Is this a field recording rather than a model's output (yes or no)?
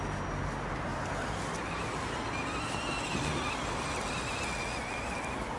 yes